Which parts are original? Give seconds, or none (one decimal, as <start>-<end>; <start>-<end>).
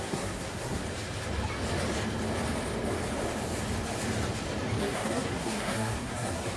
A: 0.8-4.8